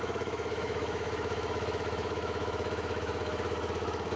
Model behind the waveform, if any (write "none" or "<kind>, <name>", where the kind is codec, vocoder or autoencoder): autoencoder, DAC-VAE